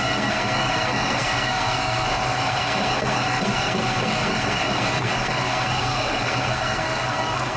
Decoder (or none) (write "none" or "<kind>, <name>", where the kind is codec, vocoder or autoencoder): codec, SNAC